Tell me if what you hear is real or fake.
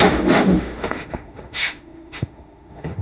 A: fake